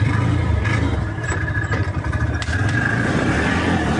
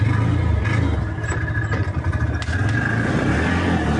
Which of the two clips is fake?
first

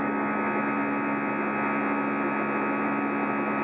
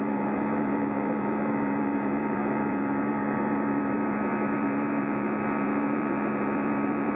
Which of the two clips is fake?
second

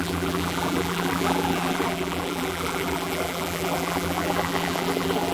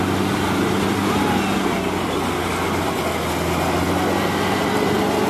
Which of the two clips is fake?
first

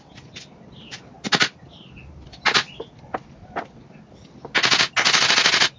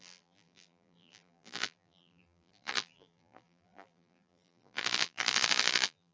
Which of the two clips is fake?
second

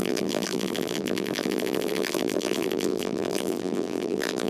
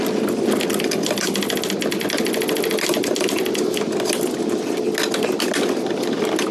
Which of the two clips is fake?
first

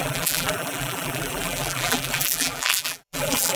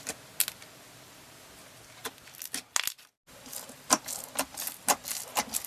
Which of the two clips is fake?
first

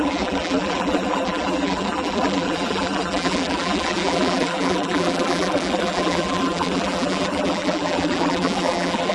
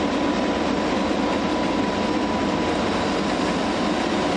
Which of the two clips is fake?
first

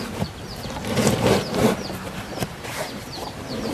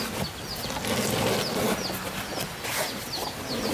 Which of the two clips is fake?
first